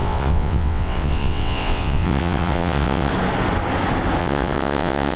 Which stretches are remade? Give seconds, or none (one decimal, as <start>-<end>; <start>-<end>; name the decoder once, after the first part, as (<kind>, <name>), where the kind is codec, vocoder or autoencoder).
0.0-3.1 (vocoder, WaveNeXt); 4.2-5.2